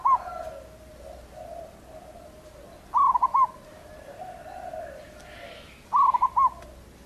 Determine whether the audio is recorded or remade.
recorded